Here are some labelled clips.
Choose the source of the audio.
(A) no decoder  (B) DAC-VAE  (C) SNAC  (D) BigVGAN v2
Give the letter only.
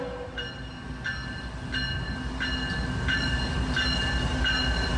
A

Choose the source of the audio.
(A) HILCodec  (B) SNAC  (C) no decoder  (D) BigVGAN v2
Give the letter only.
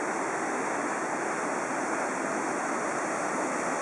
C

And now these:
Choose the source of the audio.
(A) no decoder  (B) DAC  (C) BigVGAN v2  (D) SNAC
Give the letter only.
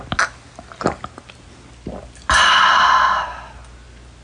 A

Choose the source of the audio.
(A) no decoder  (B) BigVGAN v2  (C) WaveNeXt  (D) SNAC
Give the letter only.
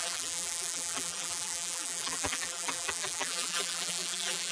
B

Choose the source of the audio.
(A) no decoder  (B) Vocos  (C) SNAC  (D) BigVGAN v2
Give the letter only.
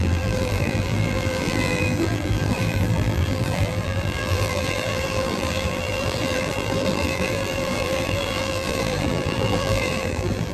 D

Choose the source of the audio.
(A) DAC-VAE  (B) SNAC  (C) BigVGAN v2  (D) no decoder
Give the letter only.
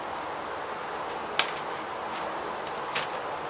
D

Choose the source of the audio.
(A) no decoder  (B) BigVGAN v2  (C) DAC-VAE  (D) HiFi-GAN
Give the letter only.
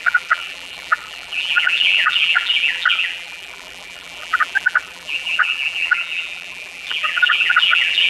B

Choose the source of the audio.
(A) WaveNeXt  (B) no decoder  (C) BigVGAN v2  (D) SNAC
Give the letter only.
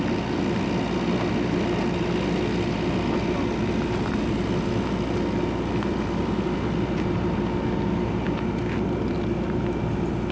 B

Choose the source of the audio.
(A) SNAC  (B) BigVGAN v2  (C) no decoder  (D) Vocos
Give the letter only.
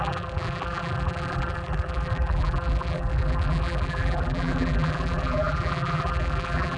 B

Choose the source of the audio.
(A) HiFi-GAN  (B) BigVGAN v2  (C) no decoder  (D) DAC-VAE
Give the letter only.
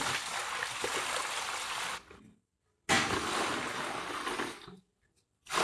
C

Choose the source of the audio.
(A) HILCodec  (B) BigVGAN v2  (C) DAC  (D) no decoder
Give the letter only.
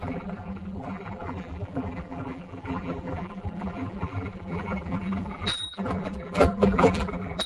B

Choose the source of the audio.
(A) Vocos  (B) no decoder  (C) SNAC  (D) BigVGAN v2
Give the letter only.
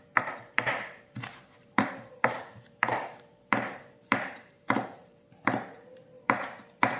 D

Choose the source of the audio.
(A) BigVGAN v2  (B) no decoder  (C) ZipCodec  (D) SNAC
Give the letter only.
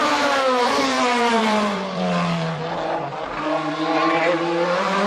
A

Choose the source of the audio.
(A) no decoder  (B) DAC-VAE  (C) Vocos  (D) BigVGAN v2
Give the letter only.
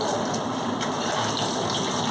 A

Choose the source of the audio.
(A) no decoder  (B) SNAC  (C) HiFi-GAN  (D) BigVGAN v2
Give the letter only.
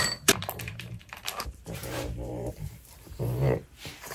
D